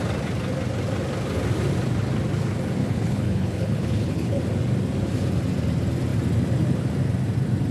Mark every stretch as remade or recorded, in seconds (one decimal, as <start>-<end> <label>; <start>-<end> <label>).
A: 0.0-2.8 recorded; 2.8-4.4 remade; 4.4-7.7 recorded